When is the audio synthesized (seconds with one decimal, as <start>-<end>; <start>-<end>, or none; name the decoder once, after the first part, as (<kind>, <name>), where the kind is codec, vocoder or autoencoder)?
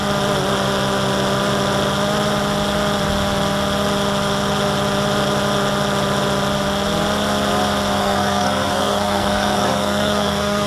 8.0-10.7 (codec, SNAC)